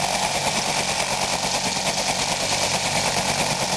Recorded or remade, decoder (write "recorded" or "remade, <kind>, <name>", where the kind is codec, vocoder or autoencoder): recorded